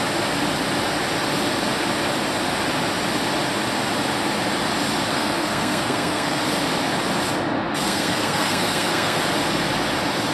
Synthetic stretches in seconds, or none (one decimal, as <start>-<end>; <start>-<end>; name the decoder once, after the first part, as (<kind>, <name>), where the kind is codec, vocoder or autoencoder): 5.1-6.4 (codec, SNAC); 7.7-9.2